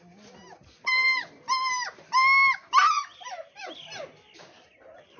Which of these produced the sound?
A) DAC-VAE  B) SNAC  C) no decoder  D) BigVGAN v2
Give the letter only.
C